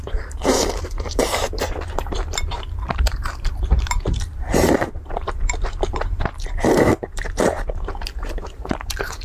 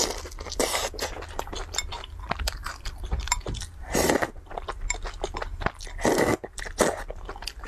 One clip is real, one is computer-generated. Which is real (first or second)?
second